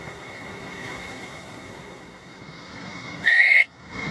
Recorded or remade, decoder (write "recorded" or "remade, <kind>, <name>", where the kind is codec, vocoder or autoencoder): remade, codec, SNAC